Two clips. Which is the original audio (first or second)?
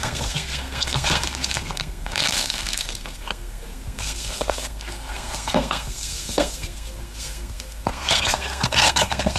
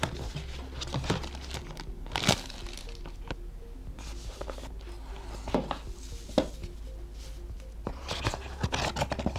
second